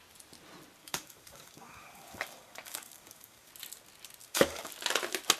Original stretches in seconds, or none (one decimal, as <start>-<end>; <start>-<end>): 0.0-0.8; 3.5-4.2; 4.7-5.4